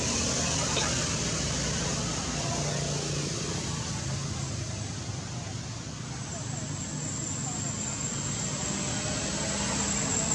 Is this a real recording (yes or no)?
yes